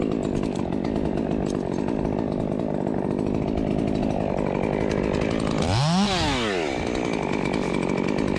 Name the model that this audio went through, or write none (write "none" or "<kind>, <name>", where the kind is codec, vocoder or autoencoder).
none